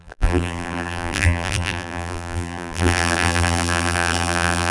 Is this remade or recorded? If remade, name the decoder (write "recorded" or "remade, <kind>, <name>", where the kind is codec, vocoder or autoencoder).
remade, vocoder, BigVGAN v2